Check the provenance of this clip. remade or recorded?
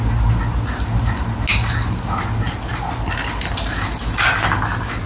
recorded